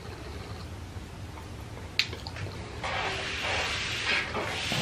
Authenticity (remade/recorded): recorded